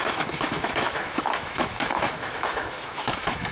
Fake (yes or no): yes